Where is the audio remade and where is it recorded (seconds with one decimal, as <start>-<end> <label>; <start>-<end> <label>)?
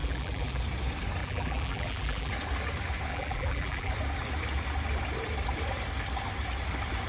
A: 0.0-0.6 remade; 0.6-1.2 recorded; 1.2-2.3 remade; 2.3-3.1 recorded; 3.1-3.9 remade; 3.9-7.1 recorded